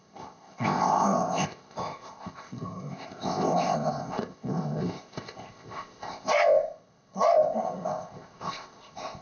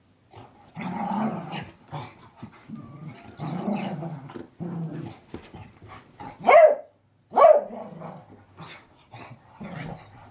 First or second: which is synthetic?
first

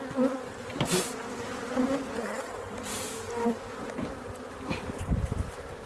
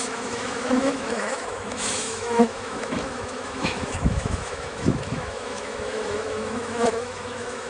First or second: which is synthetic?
second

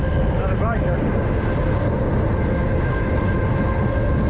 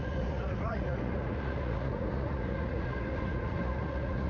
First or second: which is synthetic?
second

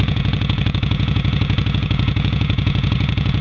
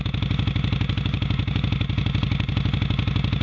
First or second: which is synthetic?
first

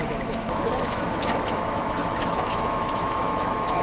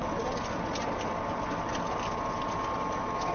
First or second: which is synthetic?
first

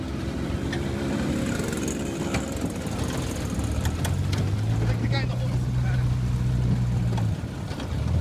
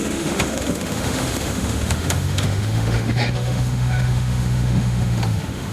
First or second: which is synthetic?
second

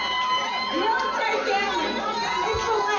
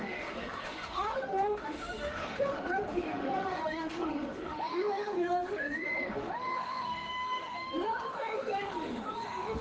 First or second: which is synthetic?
second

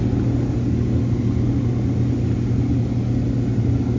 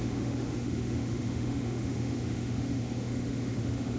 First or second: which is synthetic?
second